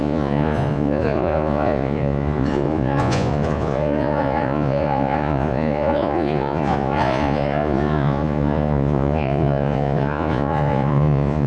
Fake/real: fake